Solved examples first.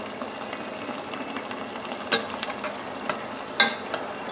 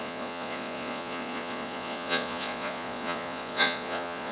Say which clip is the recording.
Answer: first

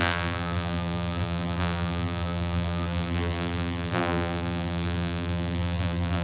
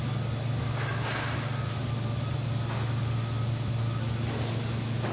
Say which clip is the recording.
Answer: second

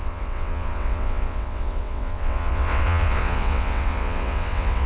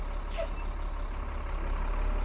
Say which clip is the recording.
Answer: second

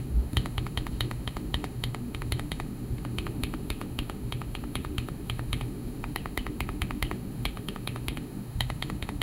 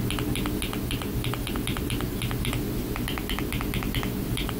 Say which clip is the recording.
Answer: second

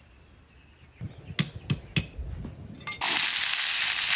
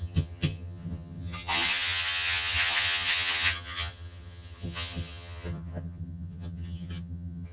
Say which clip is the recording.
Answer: first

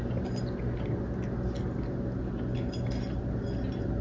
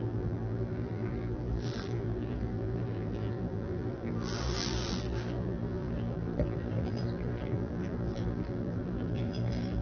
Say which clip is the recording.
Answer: first